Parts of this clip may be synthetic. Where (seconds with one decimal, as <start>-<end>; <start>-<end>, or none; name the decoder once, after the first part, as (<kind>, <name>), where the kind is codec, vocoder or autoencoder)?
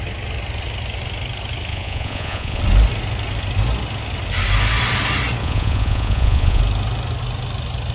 1.7-2.6 (vocoder, Vocos); 5.4-6.6